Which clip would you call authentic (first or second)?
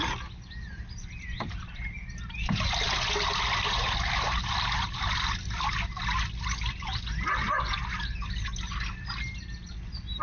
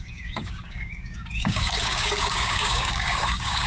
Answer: first